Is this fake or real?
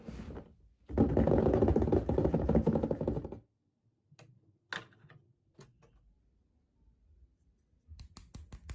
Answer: real